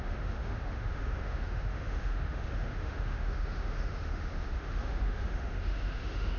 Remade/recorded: remade